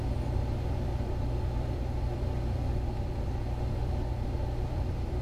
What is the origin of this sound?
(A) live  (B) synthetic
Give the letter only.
B